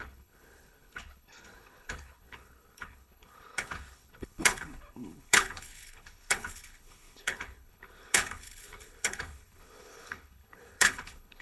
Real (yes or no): no